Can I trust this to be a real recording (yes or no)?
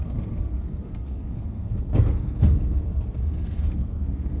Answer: no